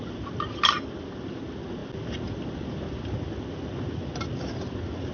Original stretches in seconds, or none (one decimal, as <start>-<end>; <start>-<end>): 0.0-5.1